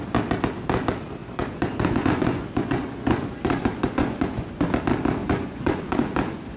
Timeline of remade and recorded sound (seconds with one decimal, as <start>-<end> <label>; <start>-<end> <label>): 0.0-1.2 recorded; 1.2-4.6 remade; 4.6-5.2 recorded; 5.2-6.6 remade